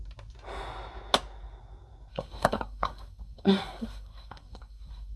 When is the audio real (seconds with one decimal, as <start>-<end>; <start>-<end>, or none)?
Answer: 0.0-2.1